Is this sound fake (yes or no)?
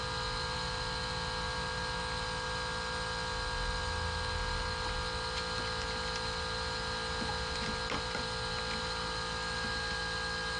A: no